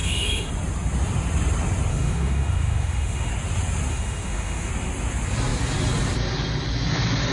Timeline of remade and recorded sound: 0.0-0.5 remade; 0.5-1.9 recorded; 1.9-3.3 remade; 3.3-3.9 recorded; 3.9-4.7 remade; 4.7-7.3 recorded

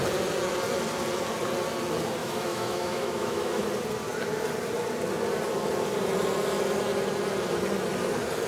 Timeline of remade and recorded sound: 0.0-2.2 recorded; 2.2-3.6 remade; 3.6-8.5 recorded